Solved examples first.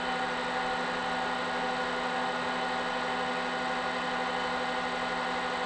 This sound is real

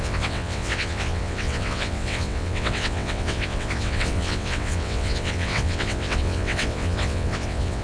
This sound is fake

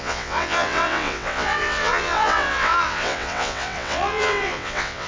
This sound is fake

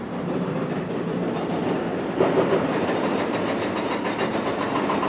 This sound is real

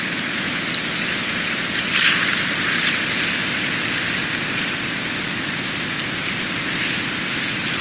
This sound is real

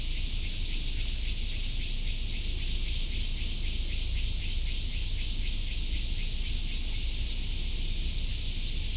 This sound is real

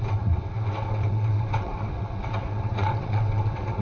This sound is fake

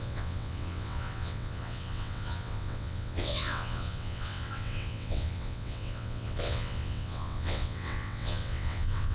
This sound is fake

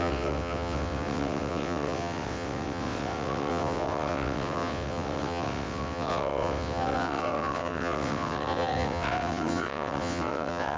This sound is fake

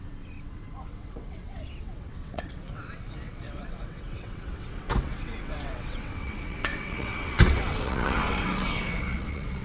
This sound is fake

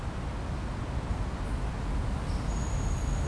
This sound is real